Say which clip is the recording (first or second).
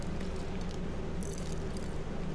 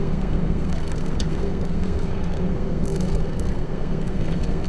first